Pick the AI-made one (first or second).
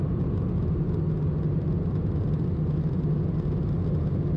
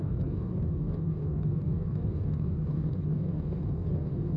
second